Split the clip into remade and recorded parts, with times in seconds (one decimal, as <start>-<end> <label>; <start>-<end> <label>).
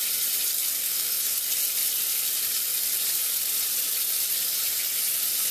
0.0-0.8 recorded; 0.8-1.4 remade; 1.4-5.5 recorded